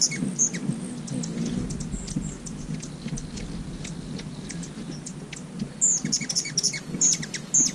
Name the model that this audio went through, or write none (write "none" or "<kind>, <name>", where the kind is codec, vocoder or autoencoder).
none